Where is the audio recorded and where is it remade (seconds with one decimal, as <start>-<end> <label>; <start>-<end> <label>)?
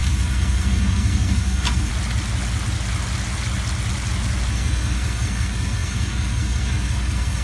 0.0-1.9 remade; 1.9-4.5 recorded; 4.5-7.4 remade